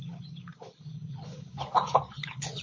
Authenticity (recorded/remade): remade